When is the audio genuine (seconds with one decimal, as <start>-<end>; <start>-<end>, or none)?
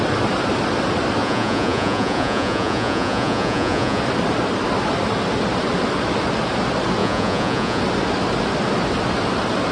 0.0-1.2; 4.0-7.0; 7.8-9.7